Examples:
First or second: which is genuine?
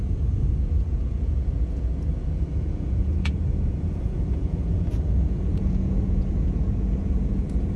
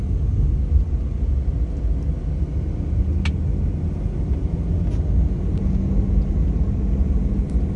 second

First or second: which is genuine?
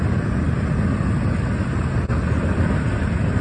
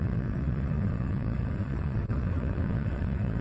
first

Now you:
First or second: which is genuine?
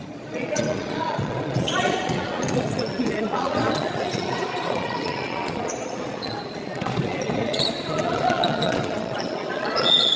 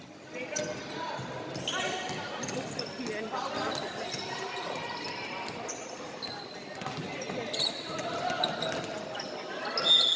second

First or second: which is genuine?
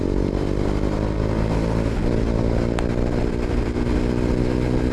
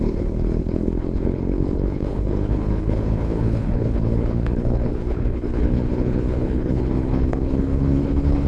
first